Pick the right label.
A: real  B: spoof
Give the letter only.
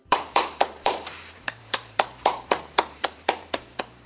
B